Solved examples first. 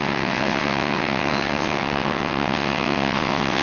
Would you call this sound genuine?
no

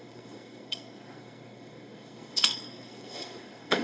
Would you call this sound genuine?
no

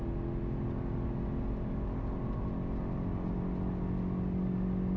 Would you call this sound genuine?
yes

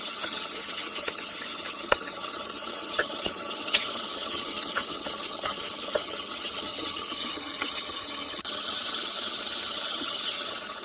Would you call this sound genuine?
no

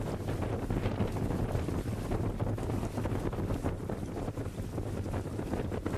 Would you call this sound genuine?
yes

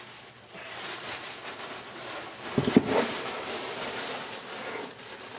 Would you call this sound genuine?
yes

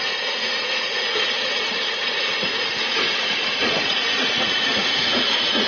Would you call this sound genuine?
no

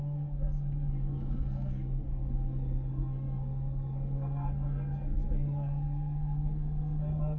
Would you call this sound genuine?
no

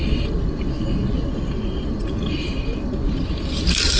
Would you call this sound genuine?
yes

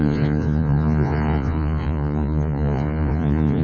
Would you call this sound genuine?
no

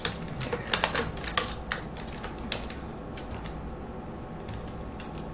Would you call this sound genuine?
yes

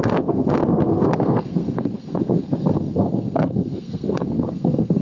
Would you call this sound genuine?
no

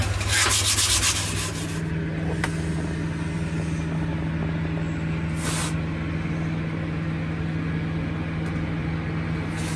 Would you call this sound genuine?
yes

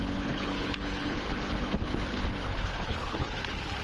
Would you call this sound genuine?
no